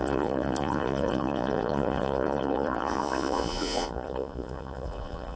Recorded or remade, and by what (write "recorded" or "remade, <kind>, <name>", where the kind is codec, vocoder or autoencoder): remade, vocoder, Vocos